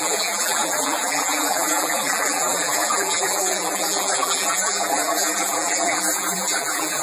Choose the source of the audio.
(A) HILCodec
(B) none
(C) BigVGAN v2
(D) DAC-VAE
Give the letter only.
C